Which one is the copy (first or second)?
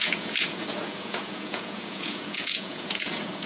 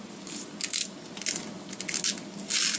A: first